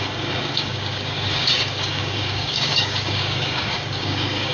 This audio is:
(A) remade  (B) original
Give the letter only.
A